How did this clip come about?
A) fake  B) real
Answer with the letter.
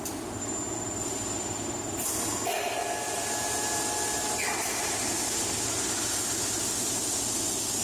B